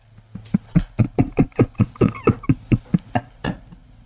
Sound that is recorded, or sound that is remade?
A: recorded